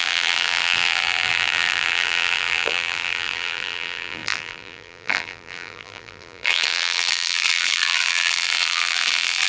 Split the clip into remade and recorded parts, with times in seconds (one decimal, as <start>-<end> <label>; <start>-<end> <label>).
0.0-9.5 remade